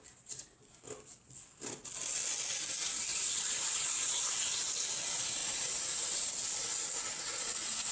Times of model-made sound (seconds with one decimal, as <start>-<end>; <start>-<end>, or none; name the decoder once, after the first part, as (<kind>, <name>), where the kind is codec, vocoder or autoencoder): 3.1-4.5 (vocoder, BigVGAN v2); 5.4-6.3